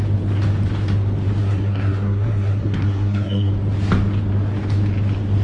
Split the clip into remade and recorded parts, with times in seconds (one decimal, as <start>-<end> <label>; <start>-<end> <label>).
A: 0.0-1.4 recorded; 1.4-3.5 remade; 3.5-5.4 recorded